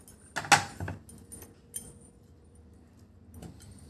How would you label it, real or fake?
real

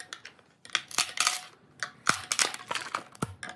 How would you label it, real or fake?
real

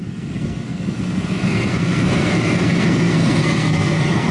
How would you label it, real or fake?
fake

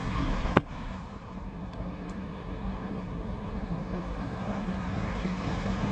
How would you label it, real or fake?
fake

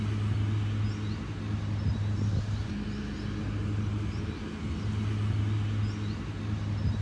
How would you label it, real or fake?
real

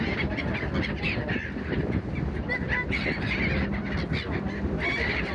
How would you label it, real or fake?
real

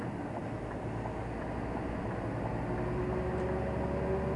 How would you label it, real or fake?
real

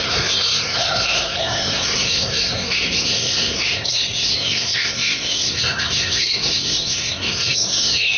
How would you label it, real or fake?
fake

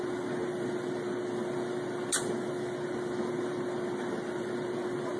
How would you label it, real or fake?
real